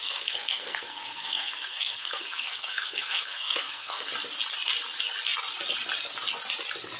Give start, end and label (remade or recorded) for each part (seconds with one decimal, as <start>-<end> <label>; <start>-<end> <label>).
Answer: 0.0-4.1 remade; 4.1-7.0 recorded